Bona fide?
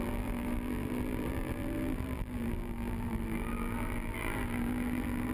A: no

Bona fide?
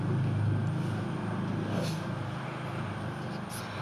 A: yes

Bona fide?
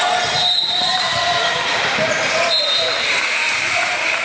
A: no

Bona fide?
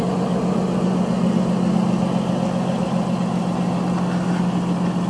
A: yes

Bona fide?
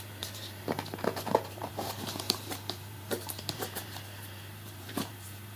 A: no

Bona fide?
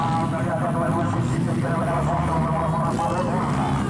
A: yes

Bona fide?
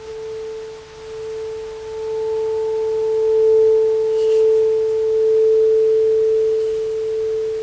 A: yes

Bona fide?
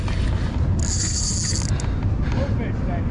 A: yes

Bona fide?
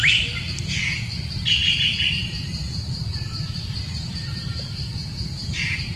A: no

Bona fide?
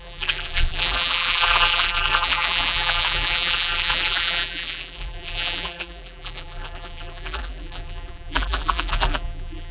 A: no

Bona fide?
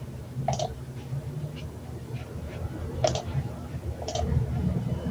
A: no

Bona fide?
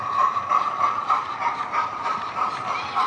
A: no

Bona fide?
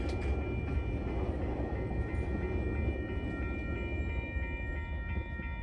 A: yes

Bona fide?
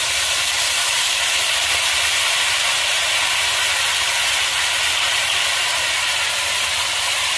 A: yes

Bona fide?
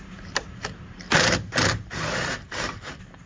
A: no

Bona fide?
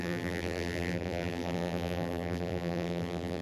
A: no